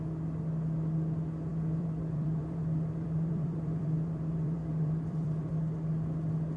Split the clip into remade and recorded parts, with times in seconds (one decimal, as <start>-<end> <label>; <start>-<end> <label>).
0.0-1.5 recorded; 1.5-5.5 remade; 5.5-6.6 recorded